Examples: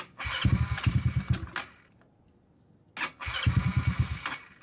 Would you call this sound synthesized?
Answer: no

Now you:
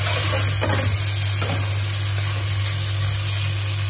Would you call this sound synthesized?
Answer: no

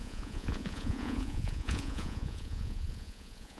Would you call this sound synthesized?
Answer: yes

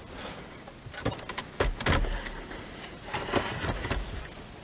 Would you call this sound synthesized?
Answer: no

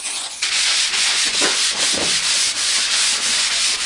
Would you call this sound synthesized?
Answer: yes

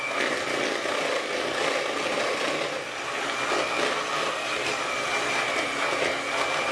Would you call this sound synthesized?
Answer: no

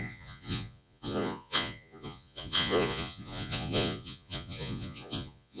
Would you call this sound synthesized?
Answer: yes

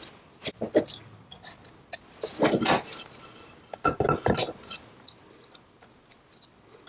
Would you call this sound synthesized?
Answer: no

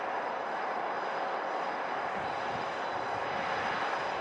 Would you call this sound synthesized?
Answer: no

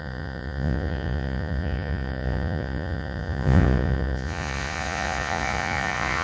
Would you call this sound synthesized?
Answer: yes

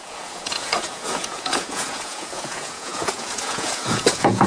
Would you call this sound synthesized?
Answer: yes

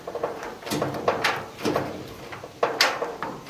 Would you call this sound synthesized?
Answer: no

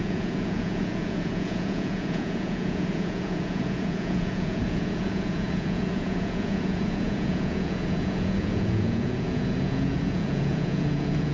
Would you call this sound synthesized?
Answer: yes